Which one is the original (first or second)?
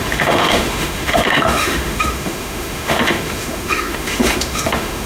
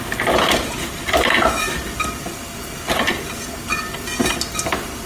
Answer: second